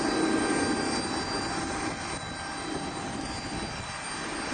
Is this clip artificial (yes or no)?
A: no